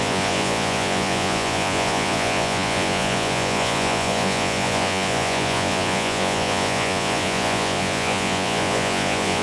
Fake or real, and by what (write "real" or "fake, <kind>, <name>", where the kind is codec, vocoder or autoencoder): fake, vocoder, Vocos